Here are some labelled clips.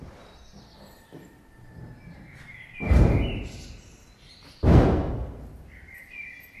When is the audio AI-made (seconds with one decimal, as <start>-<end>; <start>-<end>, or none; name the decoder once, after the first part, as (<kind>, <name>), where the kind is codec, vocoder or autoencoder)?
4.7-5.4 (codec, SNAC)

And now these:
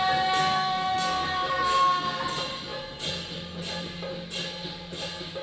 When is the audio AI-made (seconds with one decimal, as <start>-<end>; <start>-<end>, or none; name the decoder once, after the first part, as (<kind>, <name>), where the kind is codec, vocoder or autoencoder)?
0.4-2.2 (codec, SNAC)

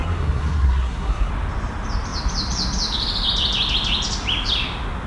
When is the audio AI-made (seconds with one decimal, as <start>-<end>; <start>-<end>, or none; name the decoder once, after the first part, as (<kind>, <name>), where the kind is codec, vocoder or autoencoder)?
0.0-1.3 (codec, SNAC)

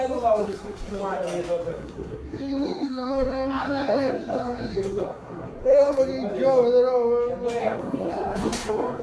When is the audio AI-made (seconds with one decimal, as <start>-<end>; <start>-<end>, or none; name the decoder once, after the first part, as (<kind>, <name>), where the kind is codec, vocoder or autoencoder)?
0.4-1.0 (codec, SNAC); 1.7-6.0; 7.6-9.0

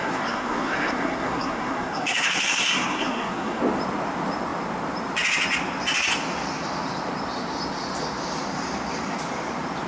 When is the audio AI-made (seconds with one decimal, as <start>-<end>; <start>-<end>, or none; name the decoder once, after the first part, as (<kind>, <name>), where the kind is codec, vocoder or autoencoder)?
0.0-3.6 (codec, SNAC)

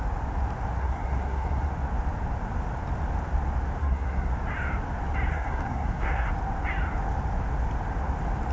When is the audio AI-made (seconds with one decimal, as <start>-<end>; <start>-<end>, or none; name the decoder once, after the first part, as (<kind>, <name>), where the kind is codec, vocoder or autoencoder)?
0.8-1.7 (codec, SNAC); 3.8-4.3; 5.3-6.3